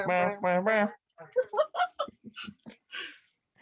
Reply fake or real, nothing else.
real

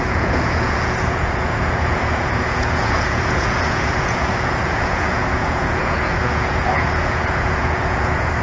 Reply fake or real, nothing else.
fake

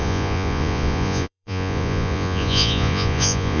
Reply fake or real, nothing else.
fake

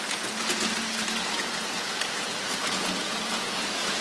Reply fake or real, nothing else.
fake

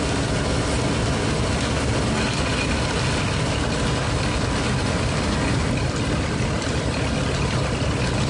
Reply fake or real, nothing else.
real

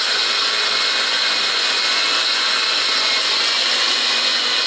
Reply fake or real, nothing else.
fake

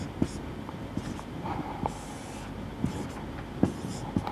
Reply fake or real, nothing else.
real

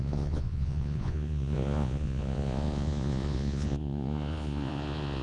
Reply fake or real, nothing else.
fake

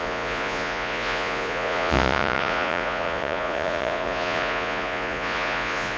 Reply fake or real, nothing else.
fake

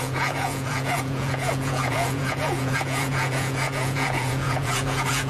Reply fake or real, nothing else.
fake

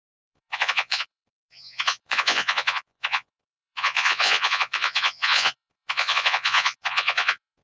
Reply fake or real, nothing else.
fake